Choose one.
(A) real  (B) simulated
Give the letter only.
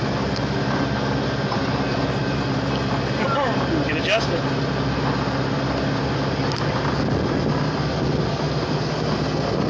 A